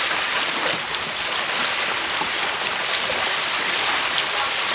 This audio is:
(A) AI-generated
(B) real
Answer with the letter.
B